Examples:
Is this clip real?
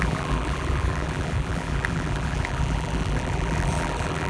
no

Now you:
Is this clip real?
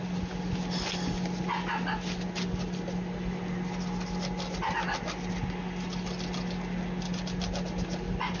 yes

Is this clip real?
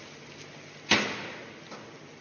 yes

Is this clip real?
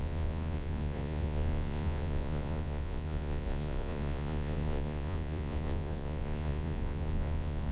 no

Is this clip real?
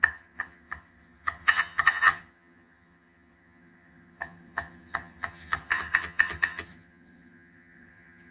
no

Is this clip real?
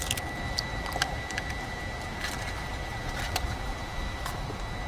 no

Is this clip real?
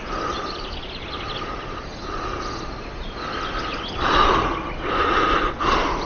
yes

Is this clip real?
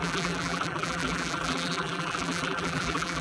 no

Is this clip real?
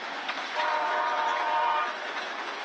no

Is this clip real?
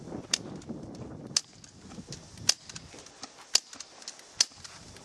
yes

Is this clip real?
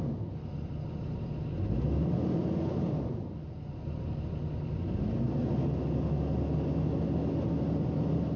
yes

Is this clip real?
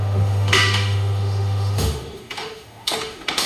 no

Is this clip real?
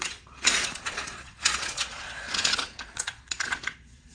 no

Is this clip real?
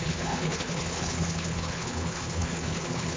no